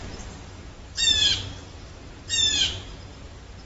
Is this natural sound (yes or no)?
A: no